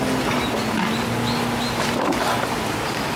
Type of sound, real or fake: real